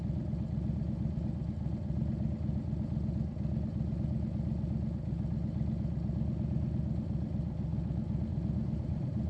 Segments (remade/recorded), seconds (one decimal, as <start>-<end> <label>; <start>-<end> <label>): 0.0-9.3 recorded